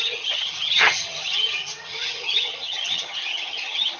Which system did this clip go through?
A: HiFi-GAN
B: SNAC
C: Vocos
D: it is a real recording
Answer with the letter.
A